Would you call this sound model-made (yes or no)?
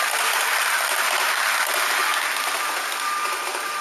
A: no